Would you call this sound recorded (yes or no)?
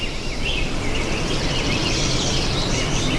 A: yes